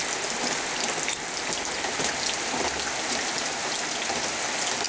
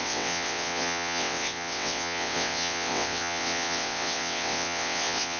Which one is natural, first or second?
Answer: first